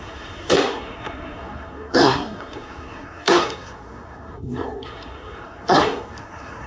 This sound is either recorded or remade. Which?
remade